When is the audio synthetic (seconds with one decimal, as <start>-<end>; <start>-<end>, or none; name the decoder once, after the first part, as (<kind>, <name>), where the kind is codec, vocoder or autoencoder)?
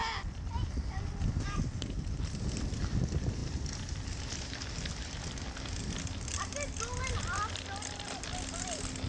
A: none